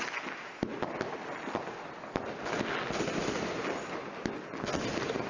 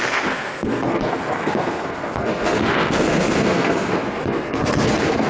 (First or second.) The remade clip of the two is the second